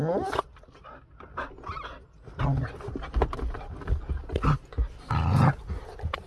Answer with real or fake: real